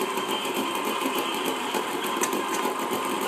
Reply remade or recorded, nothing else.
remade